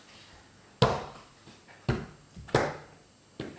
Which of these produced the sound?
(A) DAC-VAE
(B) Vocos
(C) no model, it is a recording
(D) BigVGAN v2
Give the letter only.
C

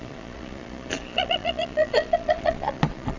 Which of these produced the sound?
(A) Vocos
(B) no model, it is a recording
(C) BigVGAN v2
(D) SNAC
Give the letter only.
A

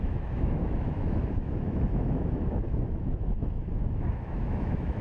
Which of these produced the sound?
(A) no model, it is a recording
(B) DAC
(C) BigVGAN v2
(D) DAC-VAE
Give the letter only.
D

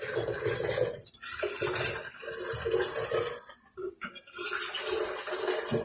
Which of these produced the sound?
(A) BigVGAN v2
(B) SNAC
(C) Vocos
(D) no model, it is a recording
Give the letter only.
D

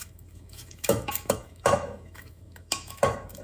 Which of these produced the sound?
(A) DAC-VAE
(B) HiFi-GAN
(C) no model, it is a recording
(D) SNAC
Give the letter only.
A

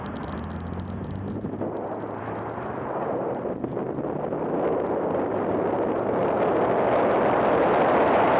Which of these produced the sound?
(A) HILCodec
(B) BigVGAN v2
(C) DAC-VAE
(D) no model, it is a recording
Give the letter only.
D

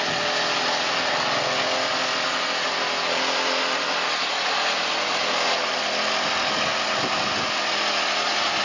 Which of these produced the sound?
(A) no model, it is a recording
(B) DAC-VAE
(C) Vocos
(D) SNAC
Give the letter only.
A